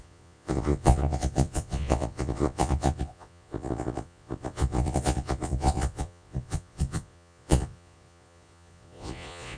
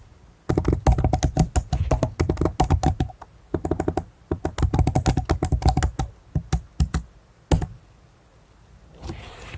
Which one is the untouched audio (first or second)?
second